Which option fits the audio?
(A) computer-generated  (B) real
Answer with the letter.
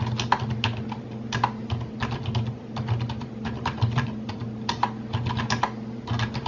B